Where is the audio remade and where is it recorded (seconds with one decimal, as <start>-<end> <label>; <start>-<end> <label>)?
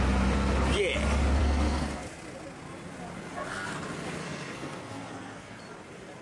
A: 0.0-1.4 recorded; 1.4-2.0 remade; 2.0-4.2 recorded; 4.2-5.6 remade; 5.6-6.2 recorded